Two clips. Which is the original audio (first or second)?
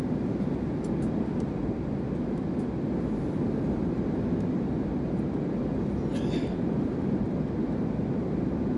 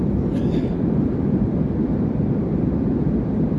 first